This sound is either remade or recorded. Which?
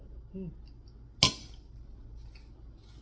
recorded